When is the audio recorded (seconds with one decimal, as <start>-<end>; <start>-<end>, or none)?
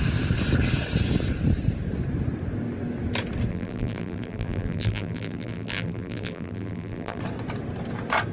0.0-3.5; 7.2-8.3